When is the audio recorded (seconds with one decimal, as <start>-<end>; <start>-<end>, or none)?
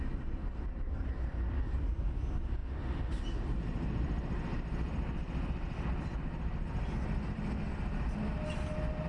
0.0-9.1